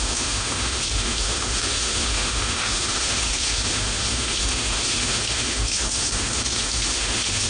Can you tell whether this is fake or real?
fake